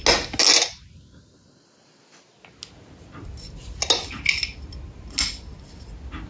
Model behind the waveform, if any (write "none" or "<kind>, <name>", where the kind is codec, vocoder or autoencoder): none